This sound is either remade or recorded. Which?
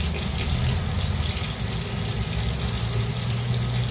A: recorded